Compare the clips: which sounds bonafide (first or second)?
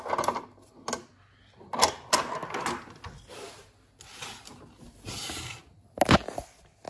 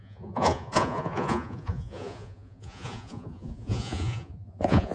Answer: first